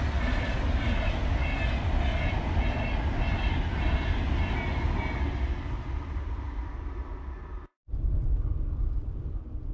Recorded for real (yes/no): yes